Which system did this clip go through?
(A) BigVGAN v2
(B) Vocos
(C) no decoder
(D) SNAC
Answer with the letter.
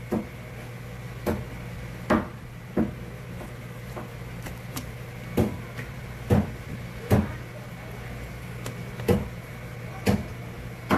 C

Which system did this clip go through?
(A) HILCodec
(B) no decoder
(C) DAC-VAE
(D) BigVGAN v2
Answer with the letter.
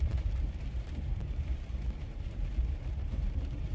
D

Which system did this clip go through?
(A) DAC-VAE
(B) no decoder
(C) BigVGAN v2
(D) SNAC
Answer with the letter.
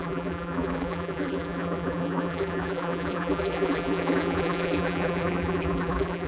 C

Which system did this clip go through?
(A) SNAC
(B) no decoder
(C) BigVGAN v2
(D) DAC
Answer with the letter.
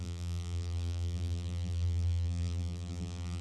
C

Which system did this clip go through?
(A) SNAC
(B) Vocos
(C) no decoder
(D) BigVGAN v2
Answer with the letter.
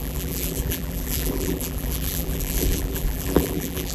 D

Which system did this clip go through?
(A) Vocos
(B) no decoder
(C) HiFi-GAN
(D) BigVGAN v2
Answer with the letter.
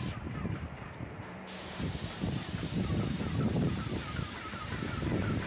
D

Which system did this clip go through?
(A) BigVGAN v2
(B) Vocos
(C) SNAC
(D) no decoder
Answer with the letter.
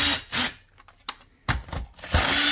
D